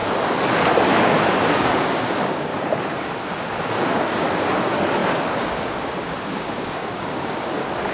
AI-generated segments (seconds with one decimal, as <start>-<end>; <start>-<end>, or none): 0.9-2.5; 3.0-7.9